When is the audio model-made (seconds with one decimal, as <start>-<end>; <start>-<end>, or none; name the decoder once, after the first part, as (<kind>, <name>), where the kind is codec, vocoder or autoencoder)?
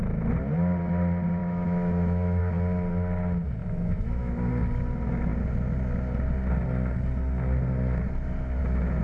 1.4-2.4 (autoencoder, DAC-VAE); 3.6-4.5